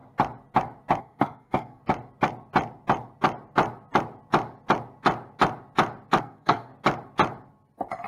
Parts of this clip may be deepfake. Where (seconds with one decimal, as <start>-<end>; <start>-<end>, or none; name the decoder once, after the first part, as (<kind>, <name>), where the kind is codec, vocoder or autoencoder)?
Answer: 1.0-1.8 (codec, SNAC); 6.2-6.7